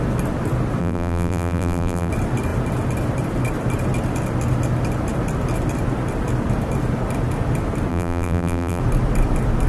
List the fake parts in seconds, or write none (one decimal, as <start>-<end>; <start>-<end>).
0.8-2.1; 7.9-8.8